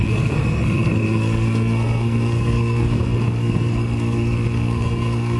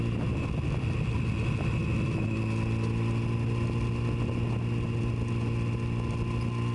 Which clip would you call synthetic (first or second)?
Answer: first